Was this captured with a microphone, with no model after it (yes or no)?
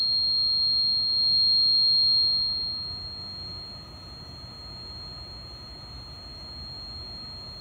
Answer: yes